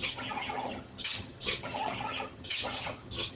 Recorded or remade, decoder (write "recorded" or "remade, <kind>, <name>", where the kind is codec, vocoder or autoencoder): remade, vocoder, HiFi-GAN